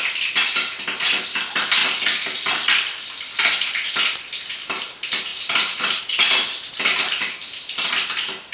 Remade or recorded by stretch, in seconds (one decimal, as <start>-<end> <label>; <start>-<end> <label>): 0.0-5.3 recorded; 5.3-6.0 remade; 6.0-8.5 recorded